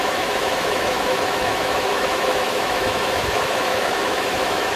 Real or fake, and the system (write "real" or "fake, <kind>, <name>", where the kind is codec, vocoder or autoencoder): fake, autoencoder, DAC-VAE